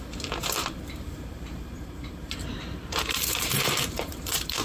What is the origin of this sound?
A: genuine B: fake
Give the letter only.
B